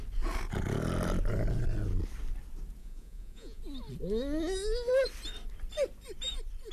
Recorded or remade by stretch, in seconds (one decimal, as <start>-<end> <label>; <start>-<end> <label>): 0.0-2.8 recorded; 2.8-3.6 remade; 3.6-6.7 recorded